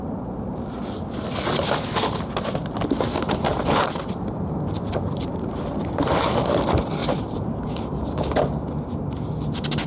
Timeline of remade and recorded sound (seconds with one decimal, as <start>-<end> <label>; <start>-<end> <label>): 0.0-7.0 recorded; 7.0-7.7 remade; 7.7-9.9 recorded